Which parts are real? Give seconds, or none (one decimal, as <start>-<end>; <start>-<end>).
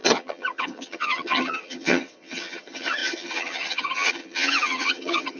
none